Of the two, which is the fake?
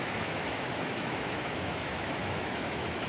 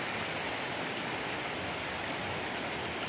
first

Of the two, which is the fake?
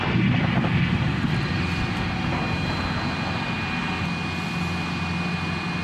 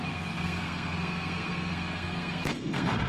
second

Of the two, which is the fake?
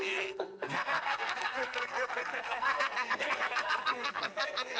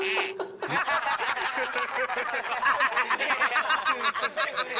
first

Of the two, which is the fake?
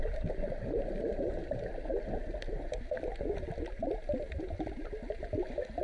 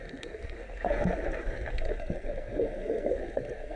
second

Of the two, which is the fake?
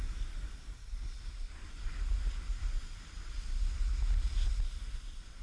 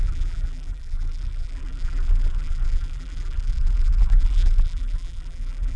second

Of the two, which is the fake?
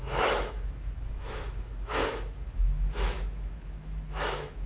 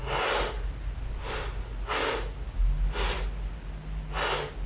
first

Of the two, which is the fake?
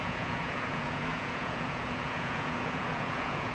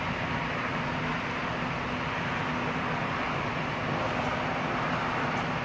first